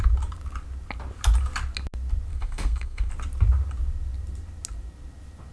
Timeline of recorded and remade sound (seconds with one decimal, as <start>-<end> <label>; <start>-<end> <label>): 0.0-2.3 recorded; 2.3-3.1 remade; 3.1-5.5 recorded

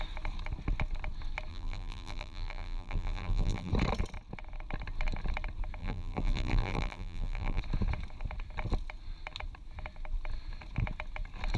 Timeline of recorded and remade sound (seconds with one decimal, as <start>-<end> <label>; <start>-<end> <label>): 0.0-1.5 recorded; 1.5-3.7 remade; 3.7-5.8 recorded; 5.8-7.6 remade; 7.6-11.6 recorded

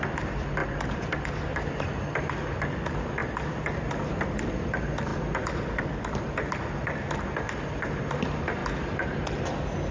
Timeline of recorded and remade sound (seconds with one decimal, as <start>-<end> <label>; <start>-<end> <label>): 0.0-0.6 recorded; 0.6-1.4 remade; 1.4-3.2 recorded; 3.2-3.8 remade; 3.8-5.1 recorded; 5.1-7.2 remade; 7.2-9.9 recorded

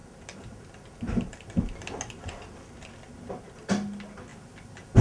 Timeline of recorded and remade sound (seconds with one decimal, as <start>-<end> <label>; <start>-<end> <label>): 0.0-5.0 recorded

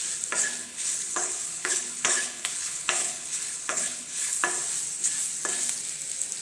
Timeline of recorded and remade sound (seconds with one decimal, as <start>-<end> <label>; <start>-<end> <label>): 0.0-0.6 recorded; 0.6-4.4 remade; 4.4-6.4 recorded

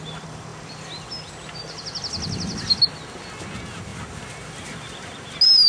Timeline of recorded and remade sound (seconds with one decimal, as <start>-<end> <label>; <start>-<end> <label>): 0.0-5.7 recorded

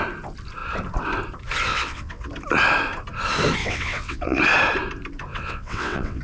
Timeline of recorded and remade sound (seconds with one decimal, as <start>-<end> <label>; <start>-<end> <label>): 0.0-1.7 recorded; 1.7-2.3 remade; 2.3-3.6 recorded; 3.6-4.4 remade; 4.4-5.3 recorded; 5.3-6.2 remade

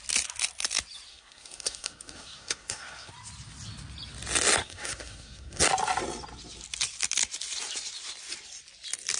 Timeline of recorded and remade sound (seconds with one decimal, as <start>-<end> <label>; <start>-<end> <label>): 0.0-1.1 recorded; 1.1-3.1 remade; 3.1-4.6 recorded; 4.6-5.6 remade; 5.6-9.2 recorded